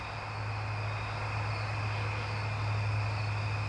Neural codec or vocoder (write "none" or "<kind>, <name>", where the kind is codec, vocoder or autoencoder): none